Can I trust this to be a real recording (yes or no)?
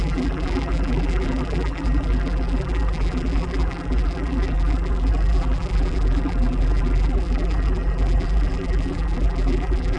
no